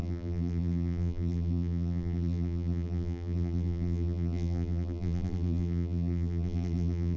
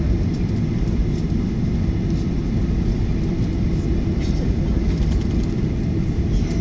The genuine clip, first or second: second